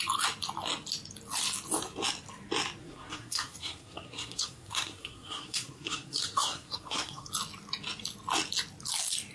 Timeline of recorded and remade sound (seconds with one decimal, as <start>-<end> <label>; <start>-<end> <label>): 0.0-2.8 recorded; 2.8-7.3 remade; 7.3-9.3 recorded